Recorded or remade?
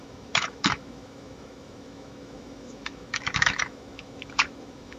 remade